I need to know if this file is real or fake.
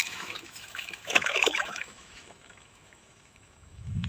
fake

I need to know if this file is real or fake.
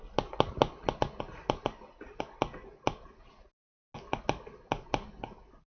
real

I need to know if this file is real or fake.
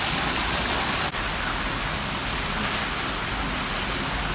real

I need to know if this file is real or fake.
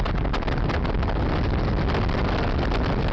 real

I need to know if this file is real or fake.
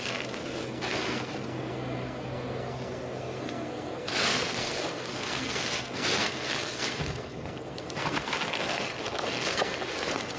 fake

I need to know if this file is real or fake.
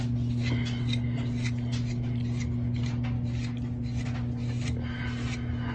real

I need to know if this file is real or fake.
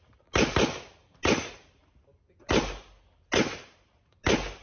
real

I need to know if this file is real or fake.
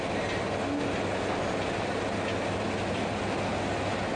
real